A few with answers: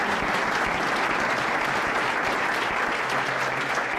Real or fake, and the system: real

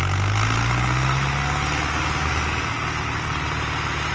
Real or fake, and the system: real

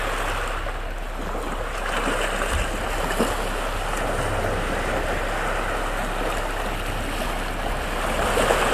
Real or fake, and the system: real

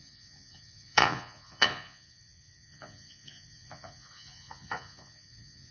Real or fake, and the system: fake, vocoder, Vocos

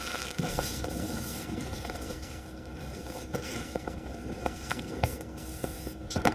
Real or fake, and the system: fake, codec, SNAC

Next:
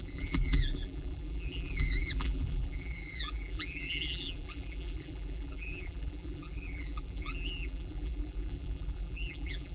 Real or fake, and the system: fake, vocoder, BigVGAN v2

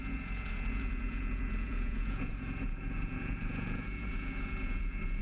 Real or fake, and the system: fake, vocoder, Vocos